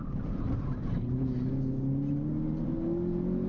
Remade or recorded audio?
recorded